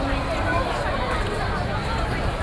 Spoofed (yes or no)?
no